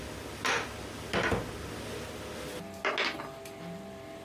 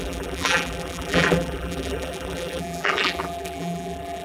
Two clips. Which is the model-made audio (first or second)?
second